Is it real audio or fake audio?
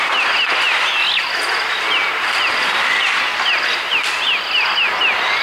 real